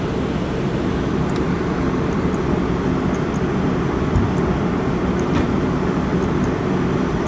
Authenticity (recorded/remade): recorded